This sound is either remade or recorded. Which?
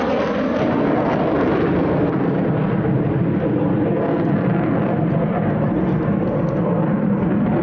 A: recorded